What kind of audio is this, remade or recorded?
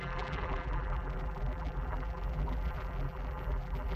remade